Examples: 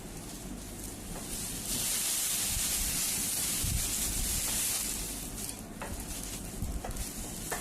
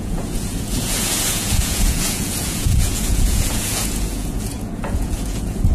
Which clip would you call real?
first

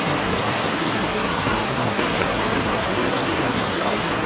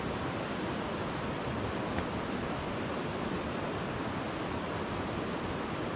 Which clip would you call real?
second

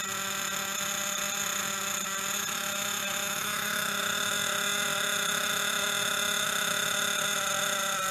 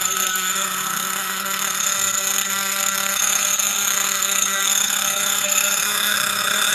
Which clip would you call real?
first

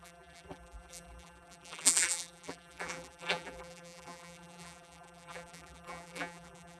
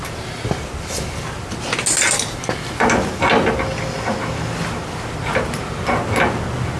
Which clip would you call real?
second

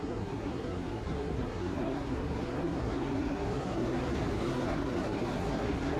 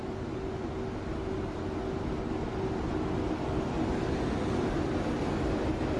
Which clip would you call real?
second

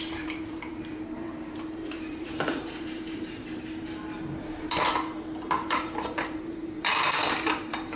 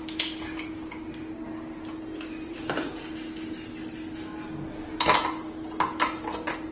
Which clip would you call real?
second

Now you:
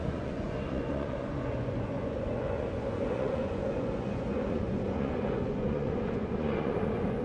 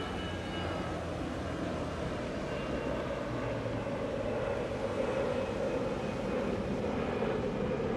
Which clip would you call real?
second